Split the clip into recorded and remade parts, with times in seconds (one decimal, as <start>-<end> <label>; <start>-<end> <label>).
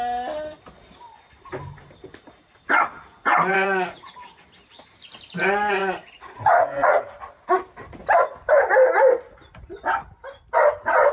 0.0-3.5 recorded; 3.5-4.1 remade; 4.1-5.8 recorded; 5.8-7.0 remade; 7.0-11.1 recorded